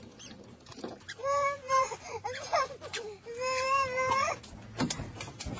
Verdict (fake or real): fake